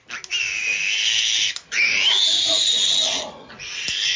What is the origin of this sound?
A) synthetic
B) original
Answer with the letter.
B